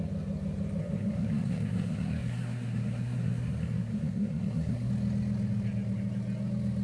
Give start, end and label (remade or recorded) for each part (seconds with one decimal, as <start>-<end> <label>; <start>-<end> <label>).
0.0-0.8 recorded; 0.8-4.9 remade; 4.9-6.8 recorded